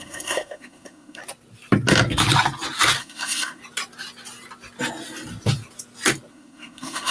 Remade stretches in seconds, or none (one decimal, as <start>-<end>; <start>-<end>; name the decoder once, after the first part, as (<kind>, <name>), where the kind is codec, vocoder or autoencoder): 0.0-1.2 (codec, SNAC); 3.0-3.6; 6.3-7.1